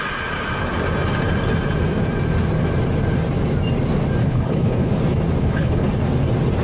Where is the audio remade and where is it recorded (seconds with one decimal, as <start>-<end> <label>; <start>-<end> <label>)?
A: 0.0-4.2 recorded; 4.2-4.9 remade; 4.9-5.4 recorded; 5.4-5.9 remade; 5.9-6.6 recorded